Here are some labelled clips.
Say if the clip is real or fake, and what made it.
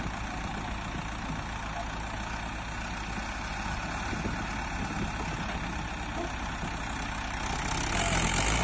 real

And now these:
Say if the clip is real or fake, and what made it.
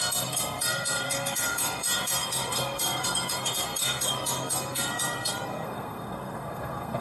fake, codec, SNAC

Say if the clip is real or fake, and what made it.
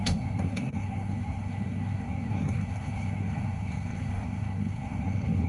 fake, codec, SNAC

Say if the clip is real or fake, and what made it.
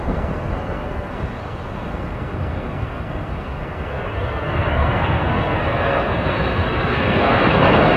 fake, codec, SNAC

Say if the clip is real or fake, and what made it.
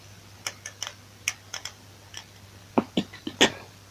real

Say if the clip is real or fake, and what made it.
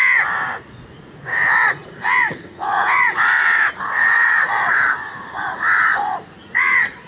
fake, vocoder, Vocos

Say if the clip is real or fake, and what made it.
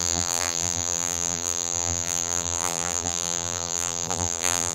fake, vocoder, BigVGAN v2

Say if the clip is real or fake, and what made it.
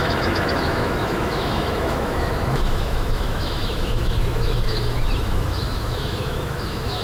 fake, autoencoder, DAC-VAE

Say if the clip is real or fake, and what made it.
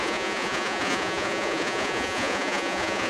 fake, vocoder, Vocos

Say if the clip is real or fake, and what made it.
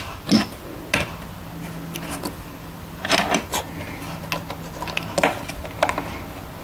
real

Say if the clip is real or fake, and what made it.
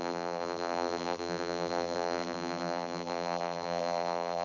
fake, vocoder, BigVGAN v2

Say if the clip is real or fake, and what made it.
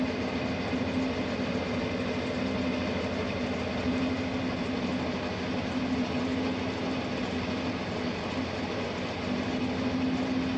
real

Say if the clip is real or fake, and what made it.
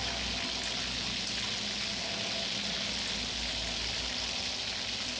real